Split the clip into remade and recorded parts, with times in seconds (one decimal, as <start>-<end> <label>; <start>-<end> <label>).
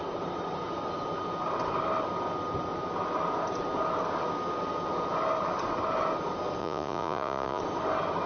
0.0-6.6 recorded; 6.6-7.6 remade; 7.6-8.3 recorded